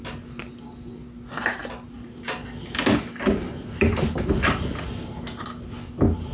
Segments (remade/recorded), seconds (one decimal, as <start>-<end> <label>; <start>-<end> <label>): 0.0-6.3 recorded